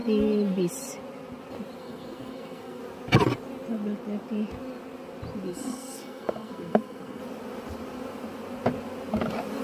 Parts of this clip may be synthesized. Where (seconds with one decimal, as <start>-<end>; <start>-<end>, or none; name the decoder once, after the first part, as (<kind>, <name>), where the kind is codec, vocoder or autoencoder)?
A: 1.8-2.8 (codec, SNAC); 5.5-7.2